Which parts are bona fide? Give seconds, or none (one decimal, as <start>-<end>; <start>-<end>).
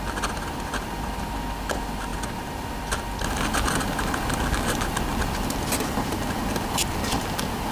0.0-7.7